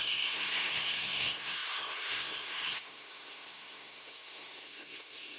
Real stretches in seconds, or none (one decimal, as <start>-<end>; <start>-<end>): none

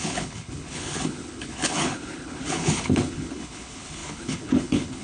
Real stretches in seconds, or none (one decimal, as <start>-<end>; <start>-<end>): none

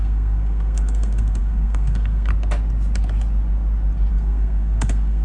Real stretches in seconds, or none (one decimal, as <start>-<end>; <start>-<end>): 2.3-4.1

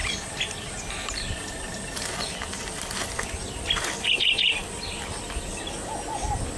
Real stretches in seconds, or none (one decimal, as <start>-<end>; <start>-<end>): 3.1-4.6; 5.4-6.6

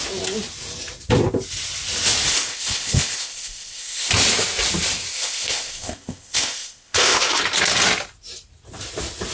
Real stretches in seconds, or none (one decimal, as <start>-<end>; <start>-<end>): 0.0-2.3; 4.1-5.1; 7.4-9.3

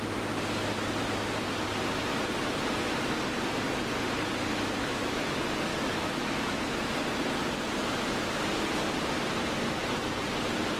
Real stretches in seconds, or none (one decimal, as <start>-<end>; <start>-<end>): 0.0-4.8; 5.3-5.7; 6.9-10.8